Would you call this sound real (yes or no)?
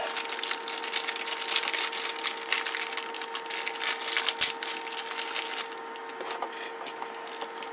yes